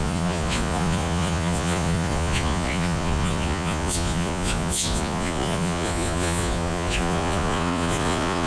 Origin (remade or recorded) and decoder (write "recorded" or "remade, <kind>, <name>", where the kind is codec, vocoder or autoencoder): remade, vocoder, Vocos